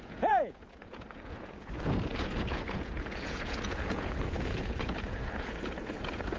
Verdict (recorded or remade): remade